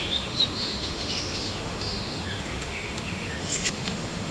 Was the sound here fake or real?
fake